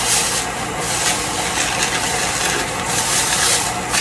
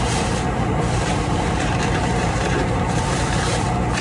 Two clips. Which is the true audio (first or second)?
first